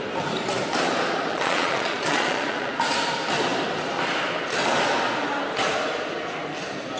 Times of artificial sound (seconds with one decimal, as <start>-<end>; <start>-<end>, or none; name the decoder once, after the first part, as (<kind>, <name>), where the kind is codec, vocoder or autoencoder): 1.3-2.7 (vocoder, Vocos)